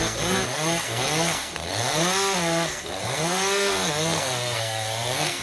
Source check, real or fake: fake